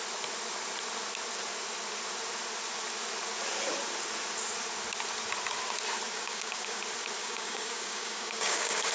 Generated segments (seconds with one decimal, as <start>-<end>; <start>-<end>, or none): 6.1-6.8; 7.2-8.9